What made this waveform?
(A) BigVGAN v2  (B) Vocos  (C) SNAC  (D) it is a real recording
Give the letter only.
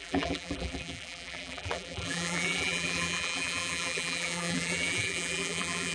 A